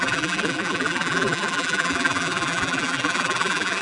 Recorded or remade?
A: remade